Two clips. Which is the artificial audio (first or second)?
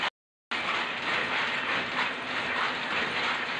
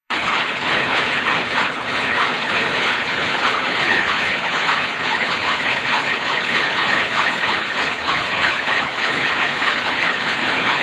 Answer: second